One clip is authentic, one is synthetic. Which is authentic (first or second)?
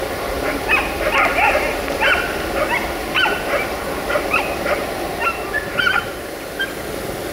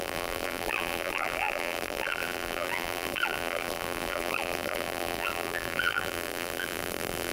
first